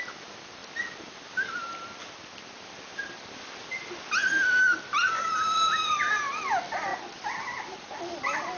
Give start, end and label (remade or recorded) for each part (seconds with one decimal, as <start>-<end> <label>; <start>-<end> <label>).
0.0-8.6 recorded